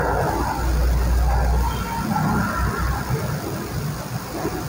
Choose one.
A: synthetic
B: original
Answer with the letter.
B